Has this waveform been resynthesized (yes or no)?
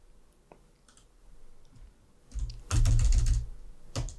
no